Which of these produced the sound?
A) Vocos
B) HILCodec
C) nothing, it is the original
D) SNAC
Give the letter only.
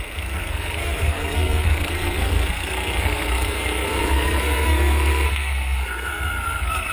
D